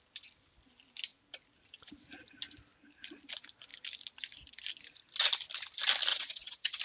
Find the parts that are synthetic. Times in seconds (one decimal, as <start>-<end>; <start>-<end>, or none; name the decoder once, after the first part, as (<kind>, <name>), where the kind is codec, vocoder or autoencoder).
6.1-6.8 (vocoder, WaveNeXt)